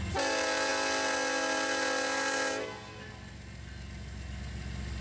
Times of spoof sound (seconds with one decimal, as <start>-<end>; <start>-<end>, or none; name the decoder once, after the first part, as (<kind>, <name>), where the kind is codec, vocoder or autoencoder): none